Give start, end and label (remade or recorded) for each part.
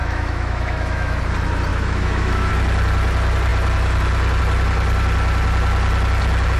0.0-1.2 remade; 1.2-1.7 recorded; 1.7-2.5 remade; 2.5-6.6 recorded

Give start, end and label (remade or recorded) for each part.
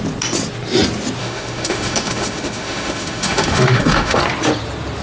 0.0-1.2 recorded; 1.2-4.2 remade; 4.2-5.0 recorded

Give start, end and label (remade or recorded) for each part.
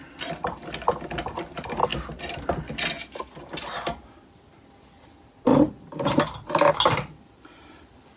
0.0-8.2 recorded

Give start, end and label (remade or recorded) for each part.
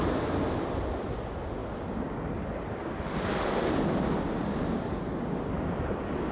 0.0-6.3 recorded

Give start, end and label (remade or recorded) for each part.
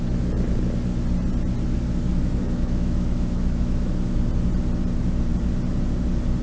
0.0-2.1 recorded; 2.1-3.9 remade; 3.9-6.4 recorded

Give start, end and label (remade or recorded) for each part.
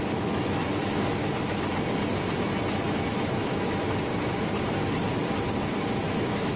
0.0-1.2 remade; 1.2-2.7 recorded; 2.7-4.1 remade; 4.1-5.9 recorded; 5.9-6.6 remade